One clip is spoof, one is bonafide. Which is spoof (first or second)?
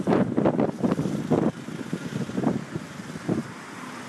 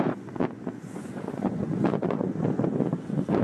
second